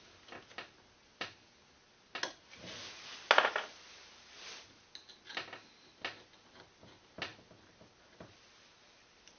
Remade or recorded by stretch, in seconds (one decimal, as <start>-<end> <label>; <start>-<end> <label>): 0.0-9.4 recorded